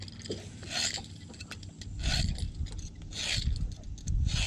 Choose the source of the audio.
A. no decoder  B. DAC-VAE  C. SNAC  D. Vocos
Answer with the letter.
A